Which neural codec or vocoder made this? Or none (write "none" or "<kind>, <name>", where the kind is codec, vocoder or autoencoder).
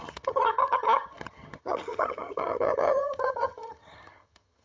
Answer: vocoder, HiFi-GAN